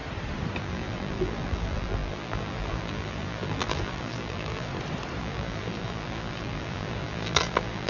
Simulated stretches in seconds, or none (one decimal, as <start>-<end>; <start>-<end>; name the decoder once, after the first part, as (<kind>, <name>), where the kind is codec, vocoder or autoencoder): 0.6-4.7 (vocoder, BigVGAN v2); 5.2-7.9